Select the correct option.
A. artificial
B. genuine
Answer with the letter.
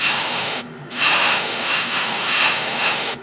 A